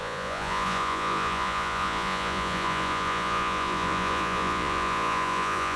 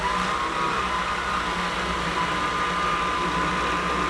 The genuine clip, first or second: second